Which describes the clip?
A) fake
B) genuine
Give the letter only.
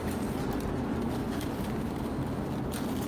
B